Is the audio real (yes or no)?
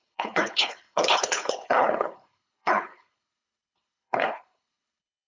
no